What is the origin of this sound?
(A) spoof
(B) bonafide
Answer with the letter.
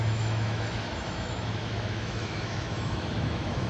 A